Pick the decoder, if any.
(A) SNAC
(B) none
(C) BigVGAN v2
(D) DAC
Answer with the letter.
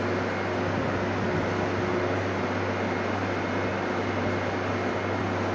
B